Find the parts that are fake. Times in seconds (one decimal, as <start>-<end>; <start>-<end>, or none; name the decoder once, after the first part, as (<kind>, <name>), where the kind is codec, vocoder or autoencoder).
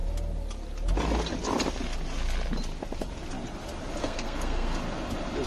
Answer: 4.0-4.8 (codec, SNAC)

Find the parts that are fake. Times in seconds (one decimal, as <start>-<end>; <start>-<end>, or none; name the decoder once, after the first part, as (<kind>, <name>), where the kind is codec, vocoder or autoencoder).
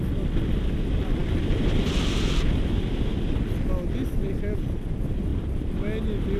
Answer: none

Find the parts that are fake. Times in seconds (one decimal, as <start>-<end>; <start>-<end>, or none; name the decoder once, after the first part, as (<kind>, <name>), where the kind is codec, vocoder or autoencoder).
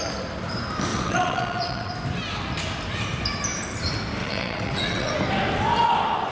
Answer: 0.9-1.9 (vocoder, WaveNeXt); 4.2-5.1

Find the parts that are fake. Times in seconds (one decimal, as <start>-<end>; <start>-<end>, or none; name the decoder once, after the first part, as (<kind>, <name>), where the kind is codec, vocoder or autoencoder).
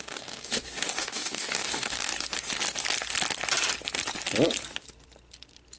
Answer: 0.0-2.1 (codec, DAC)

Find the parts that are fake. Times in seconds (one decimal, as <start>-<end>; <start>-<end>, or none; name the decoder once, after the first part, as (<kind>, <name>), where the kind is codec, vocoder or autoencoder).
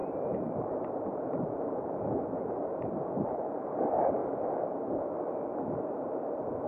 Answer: 0.0-4.2 (vocoder, BigVGAN v2); 5.6-6.7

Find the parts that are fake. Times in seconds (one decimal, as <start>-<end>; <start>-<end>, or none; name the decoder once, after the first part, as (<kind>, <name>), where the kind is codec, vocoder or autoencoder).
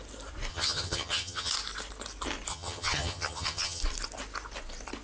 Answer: 0.5-1.5 (vocoder, HiFi-GAN); 2.5-3.8